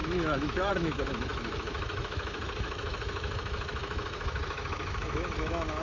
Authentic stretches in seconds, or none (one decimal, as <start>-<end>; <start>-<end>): none